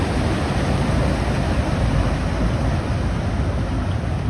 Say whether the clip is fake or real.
real